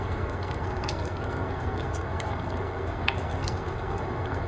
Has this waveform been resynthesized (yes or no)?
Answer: yes